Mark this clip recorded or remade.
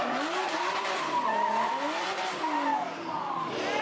recorded